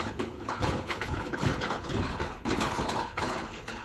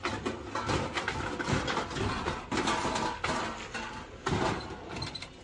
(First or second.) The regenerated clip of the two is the first